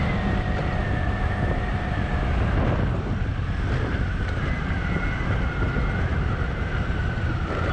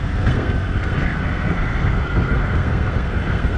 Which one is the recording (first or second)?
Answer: first